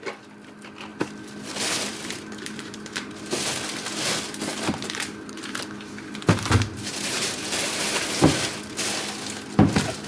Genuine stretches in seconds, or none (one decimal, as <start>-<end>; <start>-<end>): 0.0-1.9; 3.1-4.5; 7.8-10.1